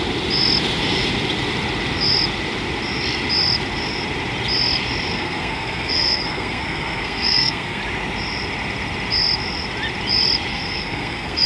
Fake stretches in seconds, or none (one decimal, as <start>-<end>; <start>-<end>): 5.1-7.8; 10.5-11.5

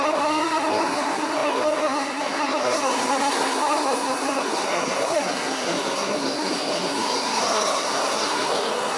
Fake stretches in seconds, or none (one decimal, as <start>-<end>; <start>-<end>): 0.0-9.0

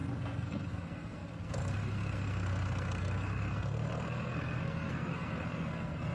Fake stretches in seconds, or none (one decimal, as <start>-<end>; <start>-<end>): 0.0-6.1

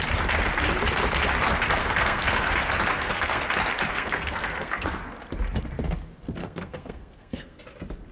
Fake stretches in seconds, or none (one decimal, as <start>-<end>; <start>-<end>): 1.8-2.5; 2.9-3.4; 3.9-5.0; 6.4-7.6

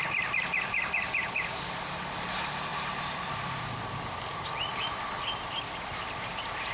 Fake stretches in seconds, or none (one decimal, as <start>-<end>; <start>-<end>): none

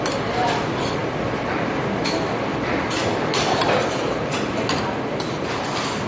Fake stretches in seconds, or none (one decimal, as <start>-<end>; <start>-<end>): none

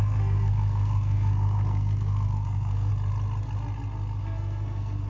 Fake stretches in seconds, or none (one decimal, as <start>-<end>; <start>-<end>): 0.0-2.9; 4.2-5.1